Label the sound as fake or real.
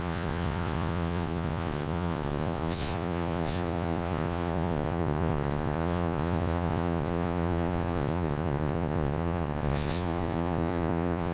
fake